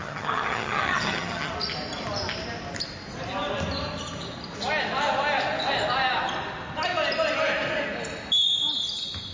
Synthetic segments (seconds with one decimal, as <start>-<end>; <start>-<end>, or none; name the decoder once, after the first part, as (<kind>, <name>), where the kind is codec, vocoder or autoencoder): 0.0-1.5 (vocoder, HiFi-GAN)